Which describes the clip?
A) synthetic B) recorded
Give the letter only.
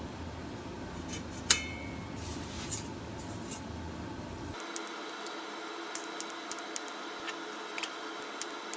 B